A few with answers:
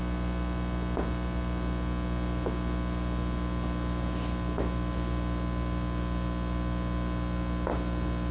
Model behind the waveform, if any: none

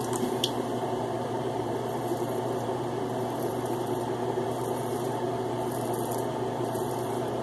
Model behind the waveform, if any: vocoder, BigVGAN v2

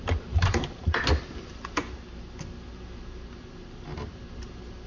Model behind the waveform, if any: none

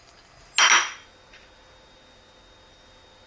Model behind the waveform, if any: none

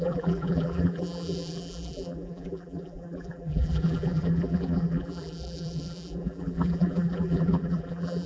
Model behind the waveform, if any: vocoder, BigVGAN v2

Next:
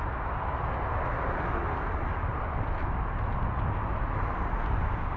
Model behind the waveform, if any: none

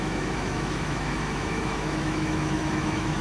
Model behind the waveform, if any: autoencoder, DAC-VAE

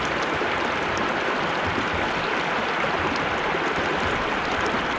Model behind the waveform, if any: none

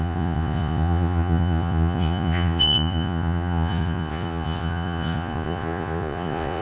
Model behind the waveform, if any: vocoder, Vocos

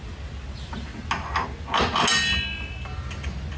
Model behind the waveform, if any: none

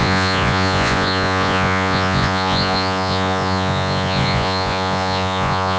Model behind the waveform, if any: vocoder, Vocos